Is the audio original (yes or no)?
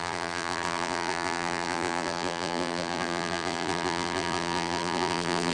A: no